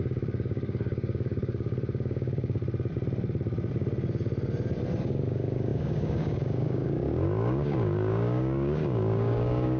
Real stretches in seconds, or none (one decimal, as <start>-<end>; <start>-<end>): 2.6-5.0